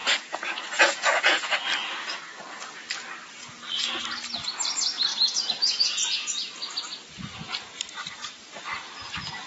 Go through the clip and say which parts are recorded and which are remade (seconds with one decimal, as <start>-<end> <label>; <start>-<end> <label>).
0.0-1.7 remade; 1.7-5.1 recorded; 5.1-6.3 remade; 6.3-9.5 recorded